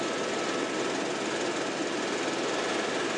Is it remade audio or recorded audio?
recorded